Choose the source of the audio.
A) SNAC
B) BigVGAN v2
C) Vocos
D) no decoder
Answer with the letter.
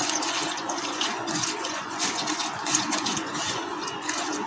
C